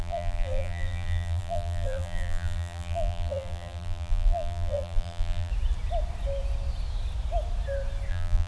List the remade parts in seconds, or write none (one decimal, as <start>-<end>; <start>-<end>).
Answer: 0.0-5.5; 8.1-8.5